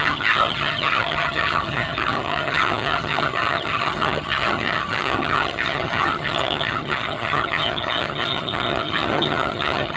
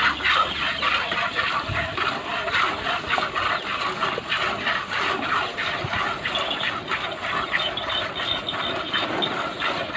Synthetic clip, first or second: first